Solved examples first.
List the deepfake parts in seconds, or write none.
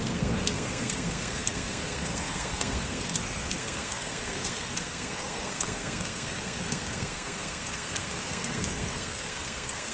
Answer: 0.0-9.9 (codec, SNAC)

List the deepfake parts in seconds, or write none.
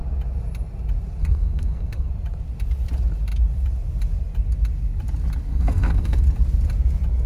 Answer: 1.2-2.1 (codec, SNAC); 5.5-6.2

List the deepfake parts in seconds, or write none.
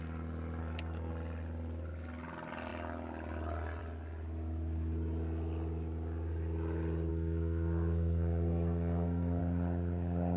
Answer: 0.6-1.1 (codec, SNAC); 7.1-9.4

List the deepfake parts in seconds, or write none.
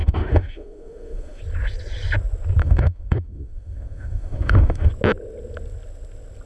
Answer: 0.0-1.4 (autoencoder, DAC-VAE); 2.6-4.9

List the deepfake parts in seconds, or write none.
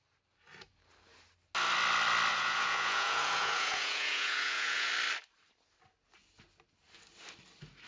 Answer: 2.3-4.9 (vocoder, Vocos)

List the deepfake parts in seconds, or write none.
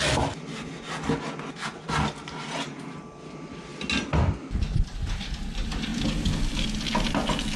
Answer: none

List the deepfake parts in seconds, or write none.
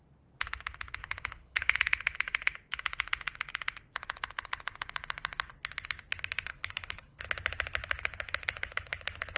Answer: 1.0-1.8 (codec, HILCodec); 6.5-7.2; 7.8-9.4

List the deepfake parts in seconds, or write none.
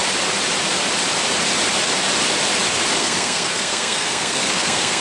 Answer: 3.0-5.0 (codec, SNAC)